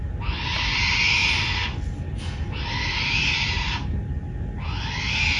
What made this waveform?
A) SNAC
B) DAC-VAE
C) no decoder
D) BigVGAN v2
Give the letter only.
C